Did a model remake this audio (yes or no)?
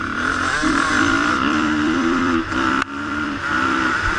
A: yes